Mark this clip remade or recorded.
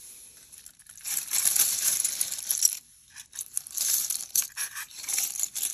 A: remade